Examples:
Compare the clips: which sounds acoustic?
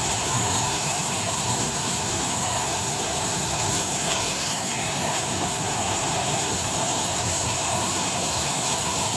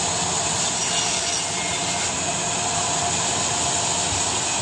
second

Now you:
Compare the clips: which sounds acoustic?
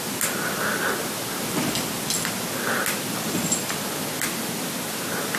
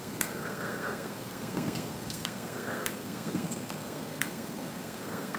first